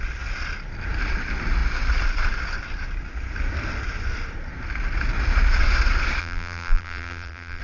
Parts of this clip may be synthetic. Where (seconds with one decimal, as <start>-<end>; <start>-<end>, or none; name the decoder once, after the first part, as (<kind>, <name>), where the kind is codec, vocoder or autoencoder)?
6.2-7.6 (vocoder, BigVGAN v2)